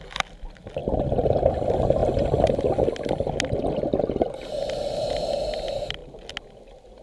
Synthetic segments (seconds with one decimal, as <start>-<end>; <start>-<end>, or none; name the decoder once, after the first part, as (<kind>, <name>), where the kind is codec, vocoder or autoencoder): none